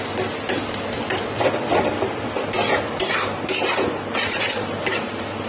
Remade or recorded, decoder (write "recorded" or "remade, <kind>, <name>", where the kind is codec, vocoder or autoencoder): recorded